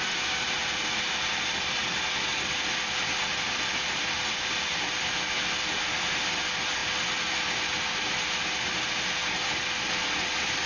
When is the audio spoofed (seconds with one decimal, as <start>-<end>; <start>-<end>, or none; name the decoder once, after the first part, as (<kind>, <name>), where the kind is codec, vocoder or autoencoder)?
0.6-1.8 (vocoder, BigVGAN v2); 2.3-5.8